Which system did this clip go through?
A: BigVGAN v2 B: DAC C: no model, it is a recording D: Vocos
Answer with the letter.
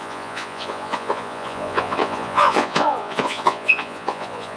D